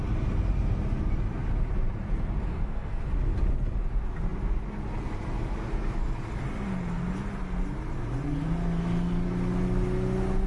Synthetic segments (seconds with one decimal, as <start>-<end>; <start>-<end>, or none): 2.5-3.0